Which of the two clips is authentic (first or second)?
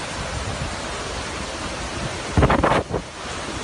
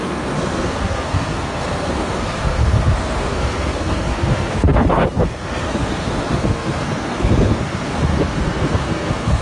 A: first